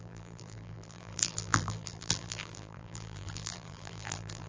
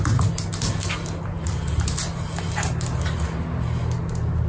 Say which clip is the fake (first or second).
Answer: first